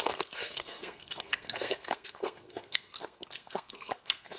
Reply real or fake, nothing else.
fake